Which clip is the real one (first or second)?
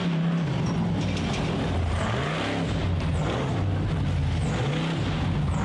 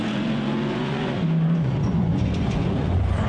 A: first